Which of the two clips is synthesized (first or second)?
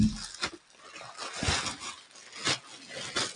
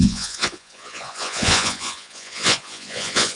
second